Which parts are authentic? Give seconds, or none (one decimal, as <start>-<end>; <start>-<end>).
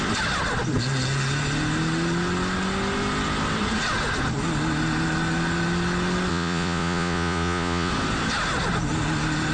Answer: 0.0-6.3; 7.9-9.5